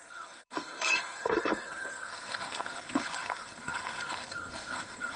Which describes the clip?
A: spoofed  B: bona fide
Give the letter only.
A